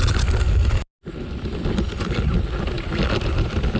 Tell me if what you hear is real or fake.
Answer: real